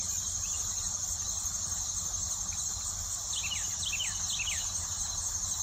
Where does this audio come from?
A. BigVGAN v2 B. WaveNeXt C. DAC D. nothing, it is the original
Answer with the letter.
D